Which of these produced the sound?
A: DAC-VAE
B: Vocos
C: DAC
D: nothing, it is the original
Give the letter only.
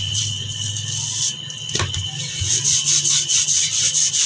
D